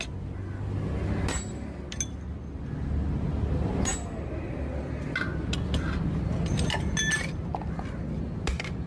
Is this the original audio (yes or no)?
yes